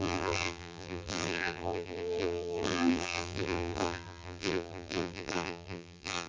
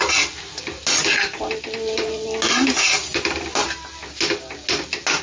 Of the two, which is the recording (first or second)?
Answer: second